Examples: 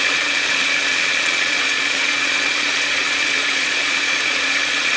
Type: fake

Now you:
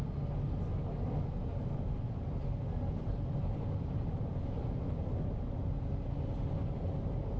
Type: real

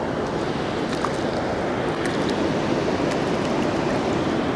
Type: real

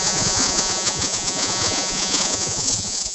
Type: fake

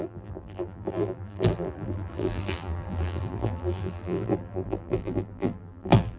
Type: fake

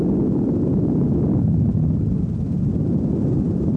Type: real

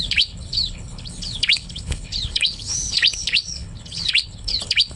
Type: fake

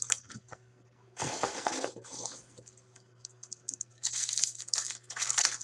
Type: fake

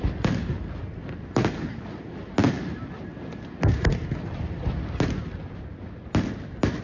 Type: real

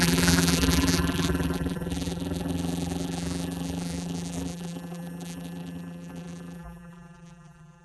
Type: fake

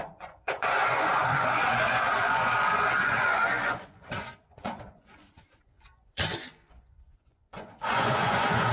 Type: fake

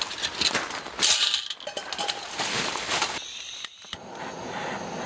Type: real